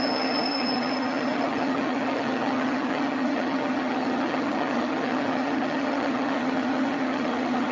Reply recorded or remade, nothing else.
remade